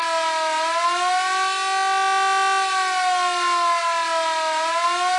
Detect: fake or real real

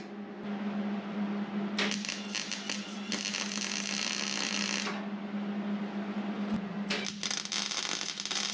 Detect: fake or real real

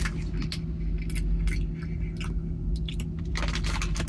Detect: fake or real real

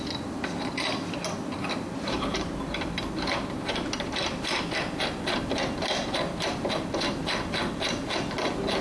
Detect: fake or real real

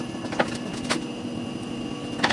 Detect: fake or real real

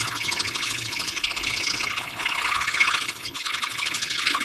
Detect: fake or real fake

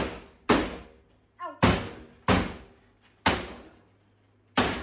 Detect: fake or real real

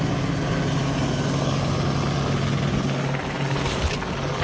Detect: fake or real real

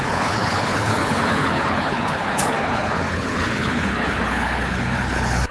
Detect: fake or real fake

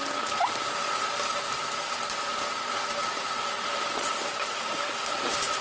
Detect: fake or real real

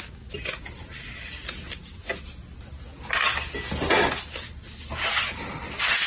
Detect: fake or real real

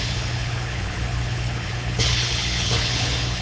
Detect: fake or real fake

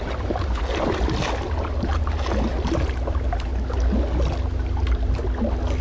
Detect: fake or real real